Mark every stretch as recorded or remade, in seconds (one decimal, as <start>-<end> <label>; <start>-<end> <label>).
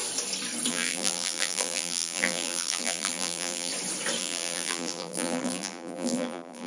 0.0-0.7 recorded; 0.7-3.7 remade; 3.7-4.2 recorded; 4.2-6.7 remade